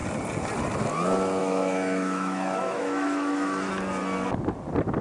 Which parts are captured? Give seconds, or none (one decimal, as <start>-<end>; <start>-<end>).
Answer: 0.0-1.4; 3.7-5.0